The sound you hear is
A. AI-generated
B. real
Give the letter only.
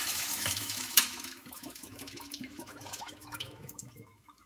A